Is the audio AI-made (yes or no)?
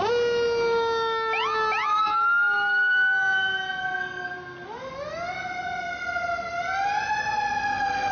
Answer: no